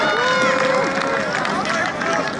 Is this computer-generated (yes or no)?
no